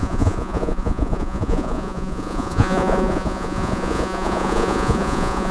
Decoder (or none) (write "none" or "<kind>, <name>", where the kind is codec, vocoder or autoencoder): vocoder, Vocos